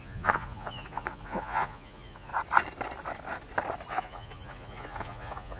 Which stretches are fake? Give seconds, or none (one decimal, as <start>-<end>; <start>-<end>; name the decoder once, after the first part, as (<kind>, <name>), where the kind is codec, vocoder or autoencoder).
0.0-2.3 (vocoder, Vocos); 3.9-5.6